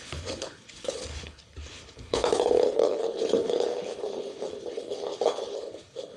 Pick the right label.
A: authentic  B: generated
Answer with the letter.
B